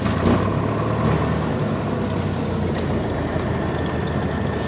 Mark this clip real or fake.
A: real